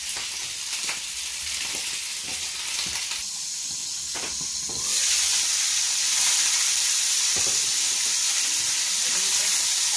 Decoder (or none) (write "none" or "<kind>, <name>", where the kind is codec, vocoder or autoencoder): none